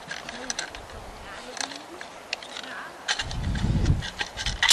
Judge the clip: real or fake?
real